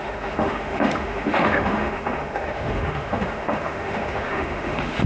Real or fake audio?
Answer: fake